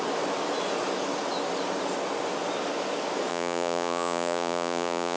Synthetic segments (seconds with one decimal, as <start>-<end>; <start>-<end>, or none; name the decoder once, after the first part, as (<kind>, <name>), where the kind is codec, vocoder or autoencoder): 3.3-5.2 (vocoder, Vocos)